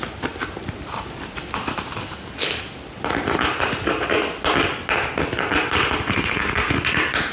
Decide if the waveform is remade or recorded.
recorded